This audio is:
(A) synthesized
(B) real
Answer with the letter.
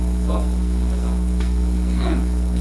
A